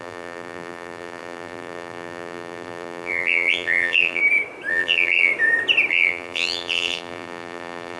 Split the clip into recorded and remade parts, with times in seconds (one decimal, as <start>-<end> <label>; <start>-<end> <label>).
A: 0.0-4.2 remade; 4.2-4.7 recorded; 4.7-5.3 remade; 5.3-5.9 recorded; 5.9-8.0 remade